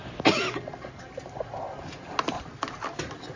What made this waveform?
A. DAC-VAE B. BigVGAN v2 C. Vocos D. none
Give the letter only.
D